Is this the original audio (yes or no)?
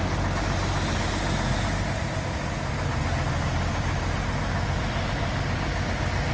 yes